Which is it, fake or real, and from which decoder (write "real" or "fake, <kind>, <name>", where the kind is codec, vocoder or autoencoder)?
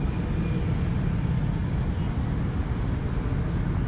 real